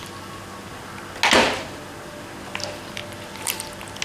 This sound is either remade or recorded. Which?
recorded